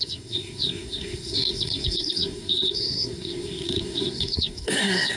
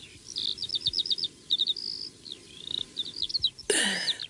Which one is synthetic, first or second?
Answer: first